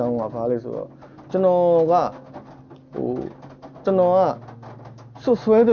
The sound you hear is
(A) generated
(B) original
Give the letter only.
B